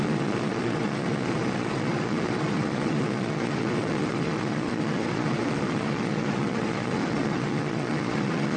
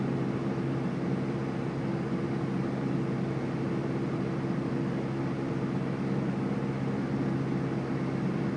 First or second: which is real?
second